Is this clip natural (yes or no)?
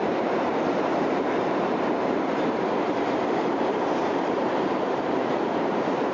no